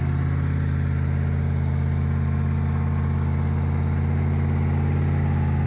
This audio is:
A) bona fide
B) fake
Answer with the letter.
A